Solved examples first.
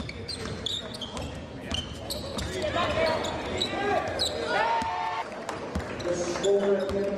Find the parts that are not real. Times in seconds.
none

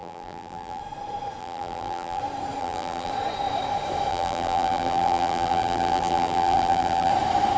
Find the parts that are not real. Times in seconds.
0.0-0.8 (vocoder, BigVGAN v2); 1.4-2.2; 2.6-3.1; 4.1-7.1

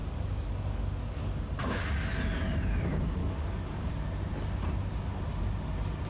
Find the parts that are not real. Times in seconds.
0.0-1.5 (codec, DAC); 3.2-3.9

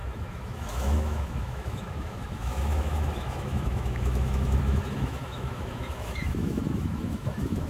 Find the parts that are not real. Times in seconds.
0.0-7.7 (autoencoder, DAC-VAE)

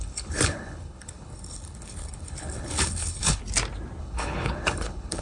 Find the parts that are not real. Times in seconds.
0.0-3.4 (codec, HILCodec); 4.0-5.2

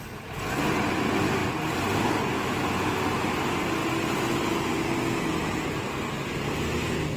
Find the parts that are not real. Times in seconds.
none

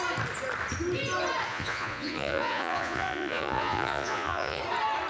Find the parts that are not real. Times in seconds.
1.5-4.6 (vocoder, Vocos)

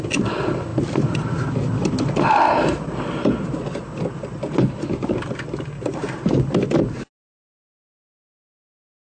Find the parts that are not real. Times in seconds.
none